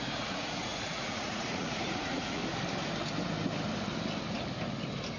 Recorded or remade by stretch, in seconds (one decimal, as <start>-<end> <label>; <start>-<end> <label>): 0.0-2.4 remade; 2.4-5.2 recorded